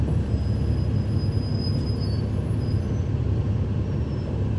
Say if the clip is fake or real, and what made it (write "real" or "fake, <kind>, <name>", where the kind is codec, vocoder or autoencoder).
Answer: real